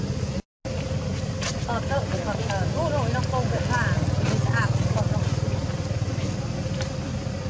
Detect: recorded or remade recorded